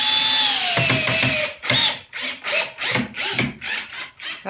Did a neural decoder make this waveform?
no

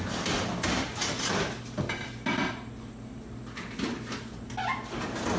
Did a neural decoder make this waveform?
no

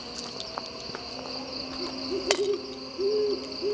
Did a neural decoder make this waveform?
no